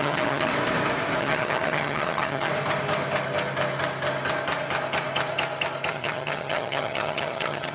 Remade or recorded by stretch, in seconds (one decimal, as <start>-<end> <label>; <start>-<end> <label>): 0.0-0.5 remade; 0.5-1.2 recorded; 1.2-2.5 remade; 2.5-5.9 recorded; 5.9-7.7 remade